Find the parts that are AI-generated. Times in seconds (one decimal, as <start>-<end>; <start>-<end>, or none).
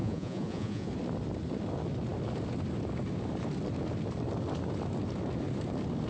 0.0-0.9